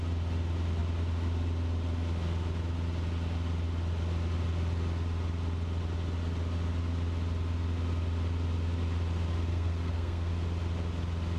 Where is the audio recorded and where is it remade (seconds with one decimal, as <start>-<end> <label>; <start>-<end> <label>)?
0.0-9.5 recorded; 9.5-10.3 remade; 10.3-11.4 recorded